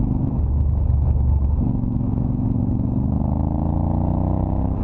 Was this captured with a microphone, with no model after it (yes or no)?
yes